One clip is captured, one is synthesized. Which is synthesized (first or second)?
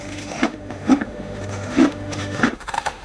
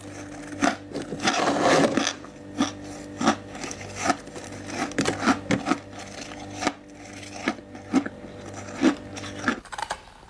first